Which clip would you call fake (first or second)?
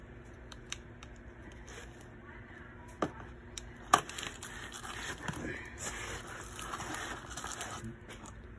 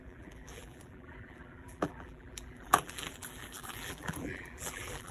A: second